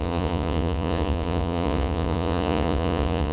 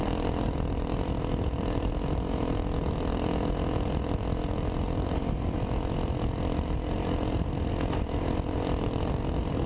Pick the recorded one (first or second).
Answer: second